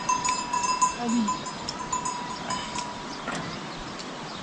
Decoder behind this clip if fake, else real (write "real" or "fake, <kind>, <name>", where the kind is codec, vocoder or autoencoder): real